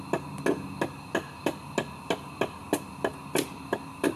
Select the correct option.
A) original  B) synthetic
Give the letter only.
A